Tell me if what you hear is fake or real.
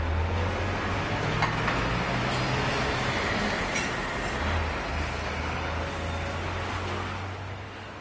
real